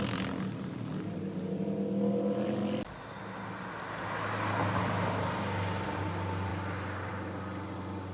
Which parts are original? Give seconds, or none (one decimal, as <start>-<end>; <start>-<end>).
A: 0.0-8.1